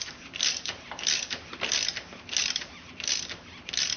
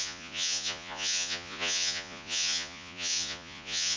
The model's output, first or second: second